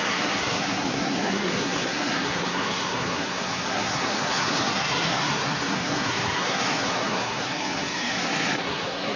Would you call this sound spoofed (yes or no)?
yes